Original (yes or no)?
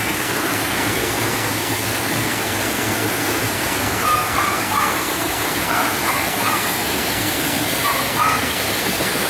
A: no